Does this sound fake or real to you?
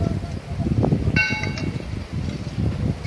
real